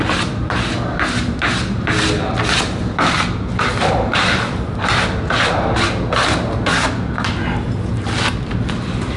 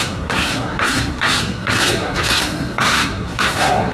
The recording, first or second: first